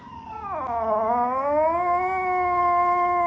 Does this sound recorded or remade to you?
recorded